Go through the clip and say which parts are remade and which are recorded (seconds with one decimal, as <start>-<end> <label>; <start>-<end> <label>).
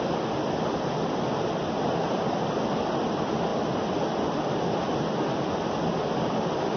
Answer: 0.0-6.8 recorded